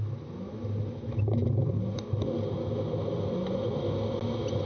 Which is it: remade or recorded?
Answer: recorded